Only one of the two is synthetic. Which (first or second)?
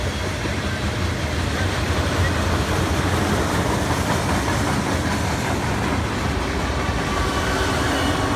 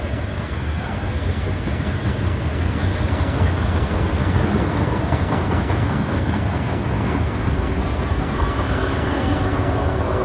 second